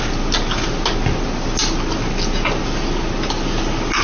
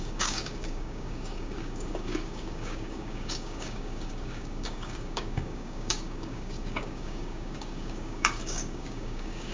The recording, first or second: first